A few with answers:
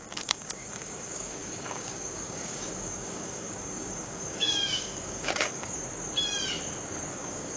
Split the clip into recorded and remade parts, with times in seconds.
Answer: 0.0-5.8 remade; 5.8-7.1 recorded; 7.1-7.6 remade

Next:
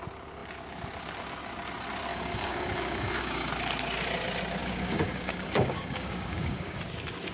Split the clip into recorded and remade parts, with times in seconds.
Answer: 0.0-2.1 recorded; 2.1-3.5 remade; 3.5-4.6 recorded; 4.6-6.8 remade; 6.8-7.3 recorded

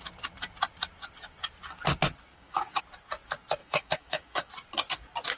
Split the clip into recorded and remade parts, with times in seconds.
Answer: 0.0-2.3 recorded; 2.3-2.8 remade; 2.8-3.6 recorded; 3.6-4.5 remade; 4.5-5.4 recorded